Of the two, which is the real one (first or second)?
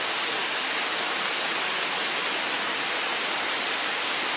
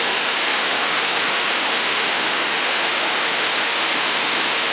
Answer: first